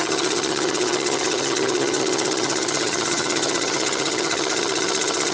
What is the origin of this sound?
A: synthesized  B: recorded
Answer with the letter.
A